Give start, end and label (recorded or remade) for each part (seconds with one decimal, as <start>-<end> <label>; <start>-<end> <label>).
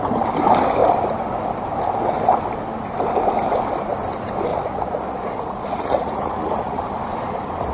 0.0-4.5 recorded; 4.5-6.8 remade; 6.8-7.7 recorded